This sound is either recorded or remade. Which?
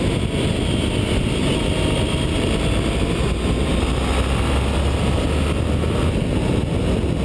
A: recorded